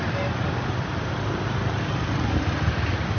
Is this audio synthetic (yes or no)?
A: no